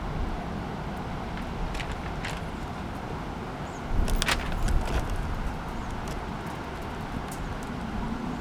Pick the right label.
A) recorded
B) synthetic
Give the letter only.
A